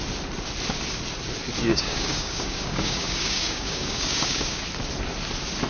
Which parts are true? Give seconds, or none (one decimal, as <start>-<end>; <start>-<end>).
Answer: 0.0-1.7; 4.6-5.7